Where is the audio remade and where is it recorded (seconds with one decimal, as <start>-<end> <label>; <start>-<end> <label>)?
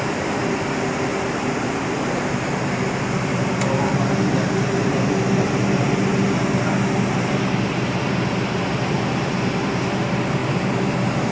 0.0-11.3 recorded